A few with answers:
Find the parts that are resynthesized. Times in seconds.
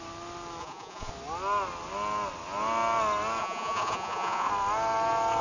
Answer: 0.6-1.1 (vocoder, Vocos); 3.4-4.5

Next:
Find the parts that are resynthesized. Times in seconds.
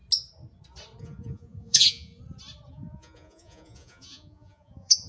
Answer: 1.0-2.1 (vocoder, Vocos); 2.7-5.1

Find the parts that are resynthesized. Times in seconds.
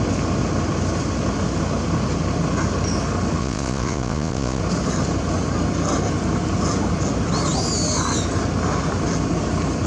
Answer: 3.4-4.6 (vocoder, Vocos)